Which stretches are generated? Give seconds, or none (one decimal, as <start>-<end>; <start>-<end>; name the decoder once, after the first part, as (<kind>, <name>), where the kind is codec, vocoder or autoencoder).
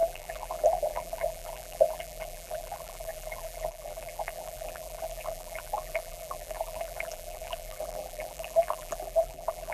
0.0-9.7 (vocoder, BigVGAN v2)